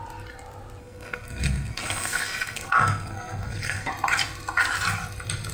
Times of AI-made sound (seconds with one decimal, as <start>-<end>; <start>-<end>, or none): 0.8-3.9